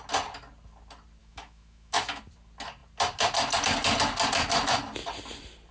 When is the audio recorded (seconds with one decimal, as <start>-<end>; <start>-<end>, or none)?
0.0-1.2; 2.2-5.7